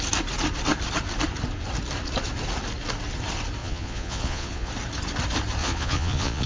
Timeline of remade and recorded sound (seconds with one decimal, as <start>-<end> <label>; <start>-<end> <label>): 0.0-3.6 recorded; 3.6-4.7 remade; 4.7-5.6 recorded; 5.6-6.5 remade